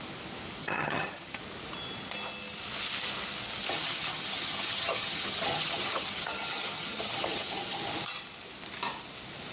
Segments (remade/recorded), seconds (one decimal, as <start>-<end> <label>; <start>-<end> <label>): 0.0-0.6 recorded; 0.6-1.4 remade; 1.4-3.6 recorded; 3.6-7.8 remade; 7.8-9.5 recorded